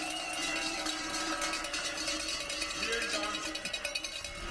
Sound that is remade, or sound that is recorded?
recorded